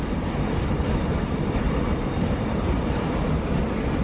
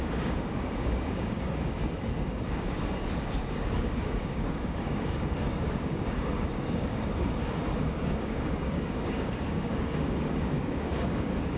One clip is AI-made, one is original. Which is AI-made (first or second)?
second